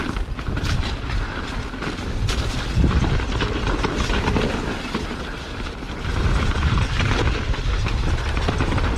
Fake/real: real